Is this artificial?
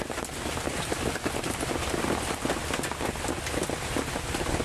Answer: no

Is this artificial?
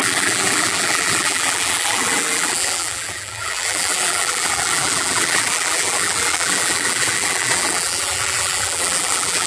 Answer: yes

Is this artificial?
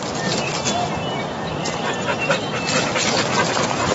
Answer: no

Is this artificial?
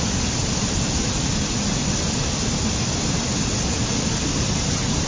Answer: no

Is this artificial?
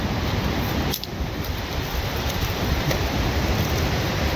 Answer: yes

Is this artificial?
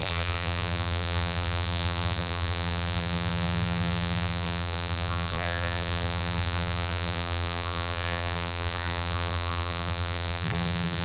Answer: yes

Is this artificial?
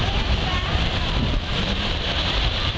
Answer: yes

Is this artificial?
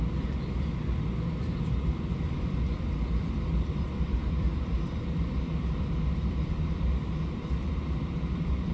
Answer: yes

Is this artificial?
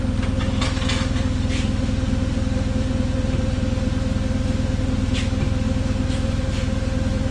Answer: no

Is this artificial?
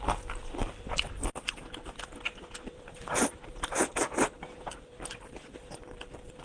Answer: yes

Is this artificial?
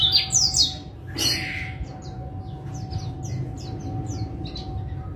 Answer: no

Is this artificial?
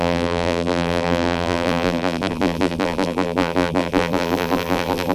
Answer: yes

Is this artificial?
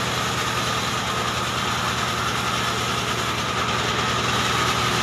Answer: no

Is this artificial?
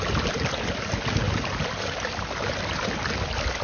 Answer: no